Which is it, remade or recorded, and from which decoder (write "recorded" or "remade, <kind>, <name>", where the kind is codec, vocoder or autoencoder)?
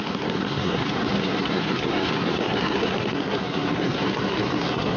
remade, codec, SNAC